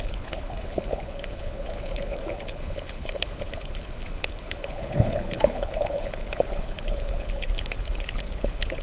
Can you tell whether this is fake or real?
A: fake